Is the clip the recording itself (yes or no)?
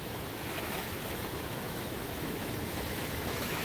no